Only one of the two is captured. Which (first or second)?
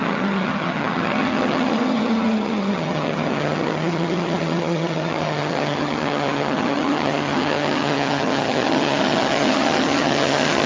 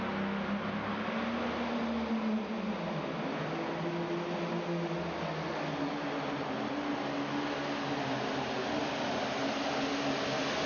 second